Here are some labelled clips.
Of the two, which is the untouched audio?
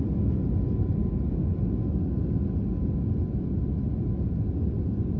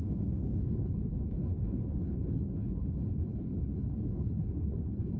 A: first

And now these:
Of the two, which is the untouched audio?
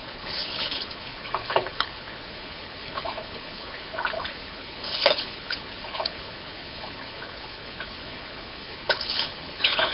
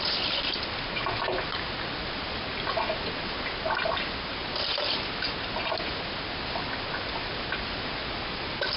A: second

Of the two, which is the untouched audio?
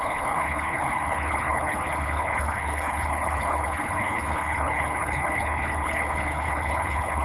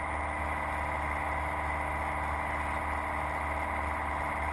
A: second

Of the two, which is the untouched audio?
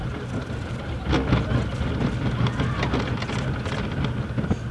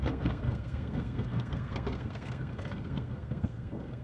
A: first